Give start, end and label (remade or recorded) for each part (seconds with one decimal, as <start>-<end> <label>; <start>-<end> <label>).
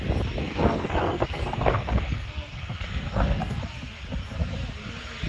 0.0-0.4 recorded; 0.4-3.6 remade; 3.6-5.3 recorded